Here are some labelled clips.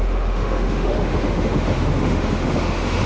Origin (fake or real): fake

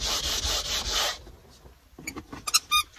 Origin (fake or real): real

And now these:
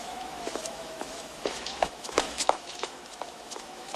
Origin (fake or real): fake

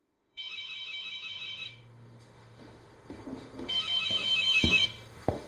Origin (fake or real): fake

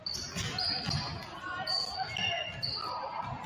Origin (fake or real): real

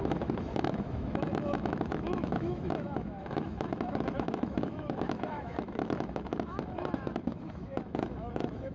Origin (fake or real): fake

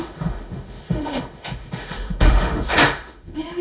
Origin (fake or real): fake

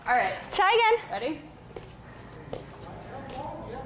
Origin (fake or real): real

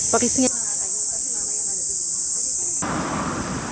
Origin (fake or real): real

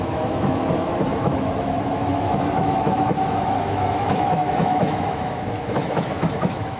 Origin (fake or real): fake